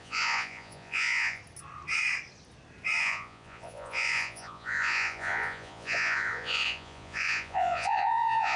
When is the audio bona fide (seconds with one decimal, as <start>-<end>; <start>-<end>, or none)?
1.4-3.0